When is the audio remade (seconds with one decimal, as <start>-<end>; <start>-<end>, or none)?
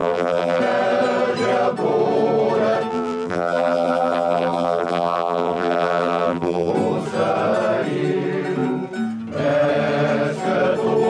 0.0-0.6; 2.9-6.7